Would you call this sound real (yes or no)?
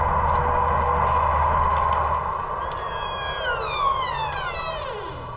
yes